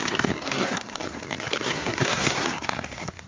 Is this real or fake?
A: fake